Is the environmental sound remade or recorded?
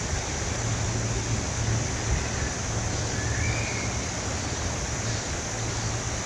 recorded